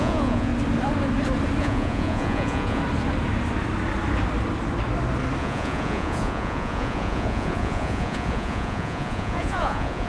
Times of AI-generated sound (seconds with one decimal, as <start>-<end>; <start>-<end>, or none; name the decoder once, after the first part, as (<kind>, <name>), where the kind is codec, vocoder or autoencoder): 0.0-0.5 (vocoder, Vocos); 1.6-2.8; 5.4-10.1